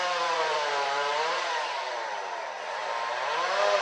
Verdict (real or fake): fake